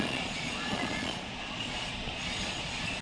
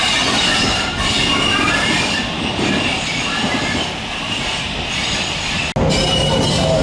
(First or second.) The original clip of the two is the second